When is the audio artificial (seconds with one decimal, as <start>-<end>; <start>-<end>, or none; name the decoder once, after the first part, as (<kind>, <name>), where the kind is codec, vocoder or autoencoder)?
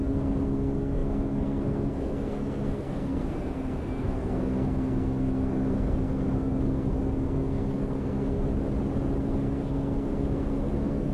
0.0-8.5 (codec, SNAC); 9.2-11.1